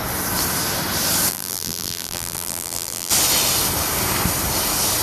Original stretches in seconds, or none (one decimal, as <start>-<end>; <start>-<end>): 0.0-1.3; 3.1-5.0